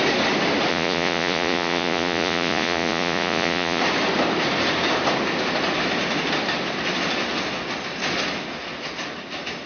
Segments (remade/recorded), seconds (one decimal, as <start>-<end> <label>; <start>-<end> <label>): 0.0-0.7 recorded; 0.7-3.8 remade; 3.8-9.7 recorded